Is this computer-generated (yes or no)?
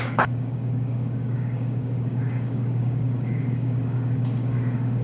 yes